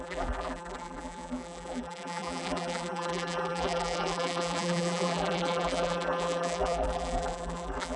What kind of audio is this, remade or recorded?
remade